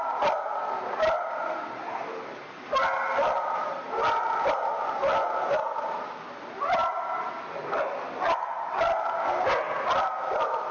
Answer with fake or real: real